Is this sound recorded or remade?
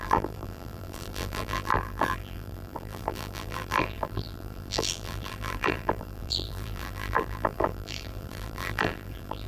remade